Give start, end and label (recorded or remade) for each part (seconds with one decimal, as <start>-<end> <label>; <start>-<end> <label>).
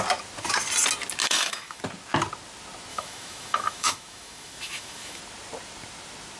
0.0-1.2 recorded; 1.2-1.8 remade; 1.8-2.9 recorded; 2.9-5.2 remade; 5.2-6.4 recorded